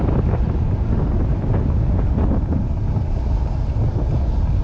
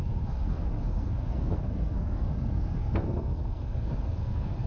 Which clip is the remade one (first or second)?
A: second